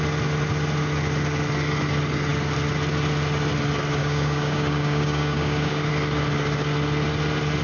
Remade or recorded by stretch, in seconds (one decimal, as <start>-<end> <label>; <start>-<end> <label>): 0.0-4.0 recorded; 4.0-5.9 remade; 5.9-7.6 recorded

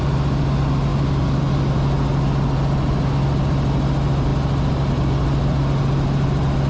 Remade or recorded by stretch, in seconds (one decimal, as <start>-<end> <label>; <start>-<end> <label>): 0.0-6.7 recorded